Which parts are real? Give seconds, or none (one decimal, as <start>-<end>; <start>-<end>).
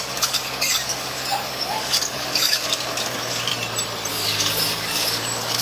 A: 3.5-4.1